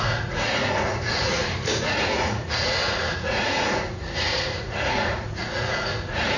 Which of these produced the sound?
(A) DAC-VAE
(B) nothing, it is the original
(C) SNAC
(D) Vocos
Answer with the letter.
D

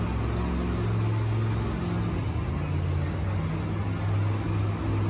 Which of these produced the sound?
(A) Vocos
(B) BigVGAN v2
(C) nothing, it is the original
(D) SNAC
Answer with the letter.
C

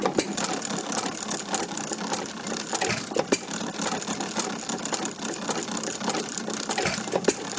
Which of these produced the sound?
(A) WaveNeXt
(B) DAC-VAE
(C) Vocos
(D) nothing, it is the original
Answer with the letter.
D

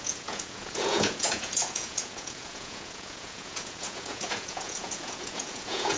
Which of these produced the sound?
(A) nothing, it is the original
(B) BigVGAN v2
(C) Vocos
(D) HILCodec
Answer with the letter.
C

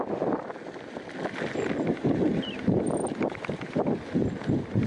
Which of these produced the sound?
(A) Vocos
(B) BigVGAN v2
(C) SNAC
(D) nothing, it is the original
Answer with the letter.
D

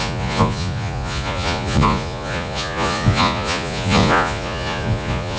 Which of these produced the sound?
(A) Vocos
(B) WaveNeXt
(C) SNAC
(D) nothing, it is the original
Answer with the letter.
A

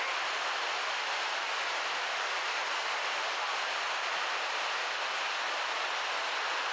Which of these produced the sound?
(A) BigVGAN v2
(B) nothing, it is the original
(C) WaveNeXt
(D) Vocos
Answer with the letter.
B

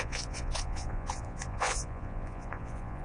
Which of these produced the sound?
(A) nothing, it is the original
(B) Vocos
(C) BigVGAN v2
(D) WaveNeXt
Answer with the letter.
B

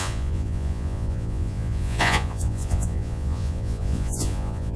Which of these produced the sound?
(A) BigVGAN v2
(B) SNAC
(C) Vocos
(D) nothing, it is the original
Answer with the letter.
C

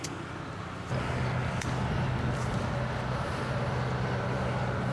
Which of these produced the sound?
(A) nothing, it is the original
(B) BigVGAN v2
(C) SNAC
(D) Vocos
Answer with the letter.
A